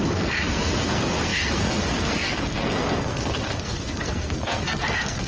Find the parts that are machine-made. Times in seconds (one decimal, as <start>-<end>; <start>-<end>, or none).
0.0-5.3